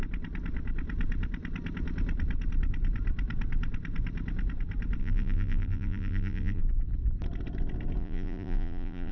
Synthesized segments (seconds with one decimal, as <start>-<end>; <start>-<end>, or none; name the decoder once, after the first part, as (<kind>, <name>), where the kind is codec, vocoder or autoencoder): 5.0-6.6 (vocoder, BigVGAN v2); 8.0-9.1